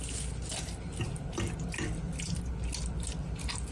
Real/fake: real